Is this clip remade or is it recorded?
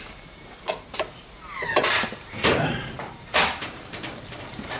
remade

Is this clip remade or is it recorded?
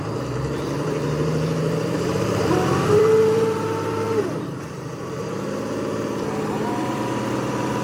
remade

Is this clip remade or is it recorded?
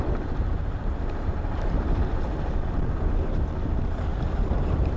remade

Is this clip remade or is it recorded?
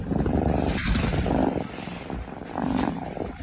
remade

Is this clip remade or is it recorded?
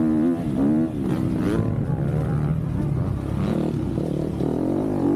recorded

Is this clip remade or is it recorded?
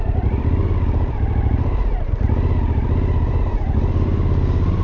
remade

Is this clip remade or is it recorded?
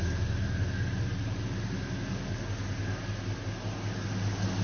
recorded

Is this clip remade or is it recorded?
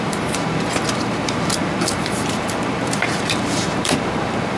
remade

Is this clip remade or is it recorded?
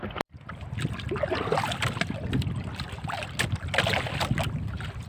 recorded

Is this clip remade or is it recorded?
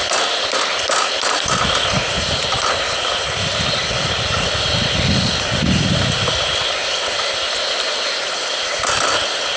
recorded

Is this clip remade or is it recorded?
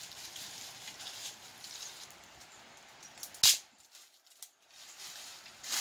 recorded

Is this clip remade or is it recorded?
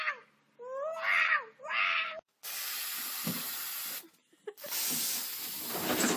recorded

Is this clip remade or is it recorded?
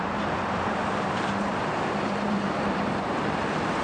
remade